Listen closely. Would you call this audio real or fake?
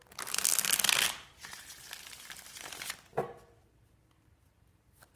real